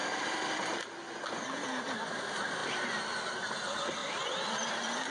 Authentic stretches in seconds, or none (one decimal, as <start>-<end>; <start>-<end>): 0.7-5.1